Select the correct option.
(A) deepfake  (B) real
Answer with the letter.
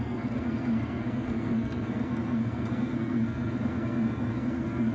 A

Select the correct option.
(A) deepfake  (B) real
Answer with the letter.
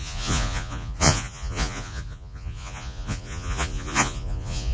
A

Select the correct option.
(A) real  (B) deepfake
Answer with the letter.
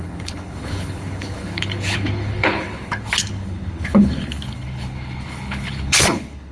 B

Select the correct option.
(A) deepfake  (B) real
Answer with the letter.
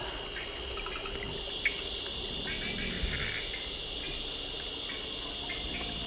B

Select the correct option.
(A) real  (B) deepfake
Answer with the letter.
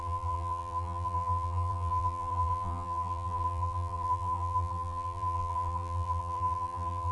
B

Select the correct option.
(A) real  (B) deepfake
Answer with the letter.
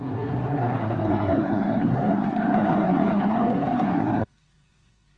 B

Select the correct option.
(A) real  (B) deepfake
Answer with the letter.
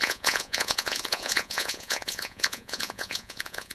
B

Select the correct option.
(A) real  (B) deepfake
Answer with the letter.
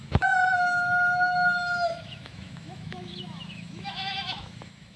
B